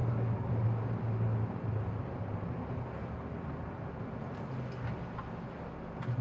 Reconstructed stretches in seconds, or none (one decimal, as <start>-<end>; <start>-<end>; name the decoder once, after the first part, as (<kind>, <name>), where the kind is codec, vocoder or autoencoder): 0.0-0.5 (codec, DAC)